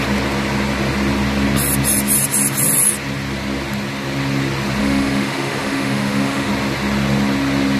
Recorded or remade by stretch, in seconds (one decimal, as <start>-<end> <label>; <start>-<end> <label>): 0.0-4.8 recorded; 4.8-6.5 remade; 6.5-7.8 recorded